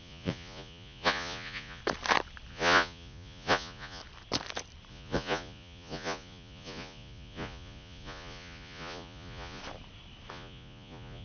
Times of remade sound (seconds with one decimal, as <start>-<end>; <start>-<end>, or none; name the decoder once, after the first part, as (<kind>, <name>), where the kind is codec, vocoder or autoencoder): 0.0-1.8 (vocoder, Vocos); 2.5-4.0; 4.9-9.6; 10.3-11.2